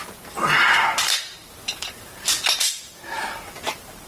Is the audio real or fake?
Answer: fake